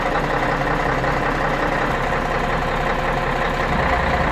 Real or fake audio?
real